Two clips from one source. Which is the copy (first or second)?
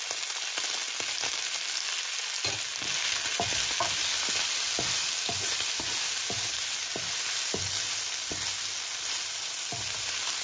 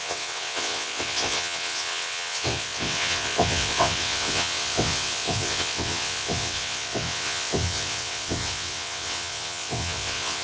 second